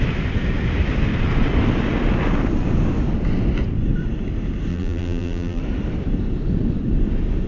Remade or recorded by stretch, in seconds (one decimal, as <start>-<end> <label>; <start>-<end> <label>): 0.0-4.7 recorded; 4.7-5.6 remade; 5.6-7.5 recorded